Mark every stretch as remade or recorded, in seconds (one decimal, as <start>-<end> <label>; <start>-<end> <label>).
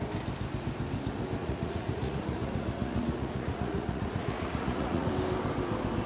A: 0.0-1.4 recorded; 1.4-5.1 remade; 5.1-6.1 recorded